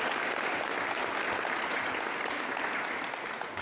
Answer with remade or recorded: recorded